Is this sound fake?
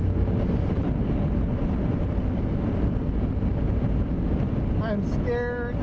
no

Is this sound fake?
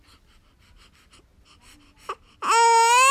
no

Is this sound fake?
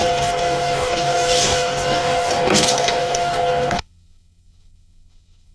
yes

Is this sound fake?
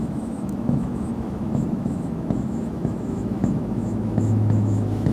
yes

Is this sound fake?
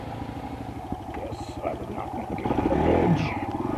no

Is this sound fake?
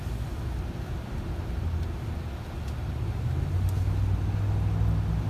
no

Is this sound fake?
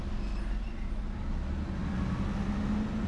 no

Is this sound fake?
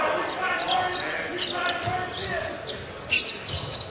no